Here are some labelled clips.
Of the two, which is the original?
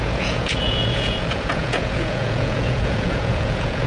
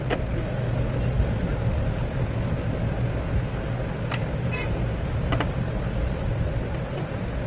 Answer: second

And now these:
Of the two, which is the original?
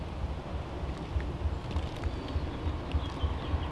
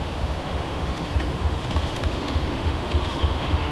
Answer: first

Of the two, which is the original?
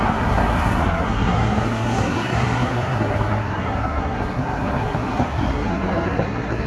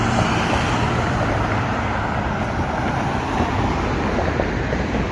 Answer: second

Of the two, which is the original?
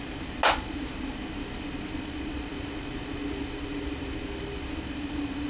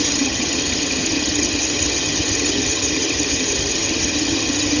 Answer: first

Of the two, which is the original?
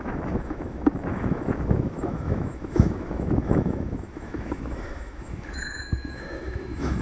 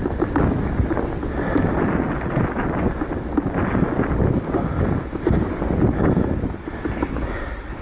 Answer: second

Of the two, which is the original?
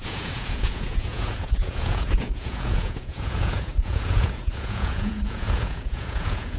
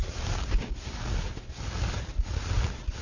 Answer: second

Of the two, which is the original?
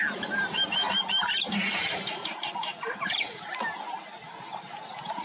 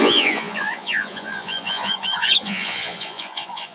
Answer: first